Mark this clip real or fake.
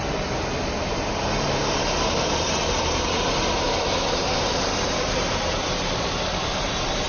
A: fake